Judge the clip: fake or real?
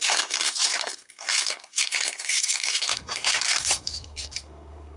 fake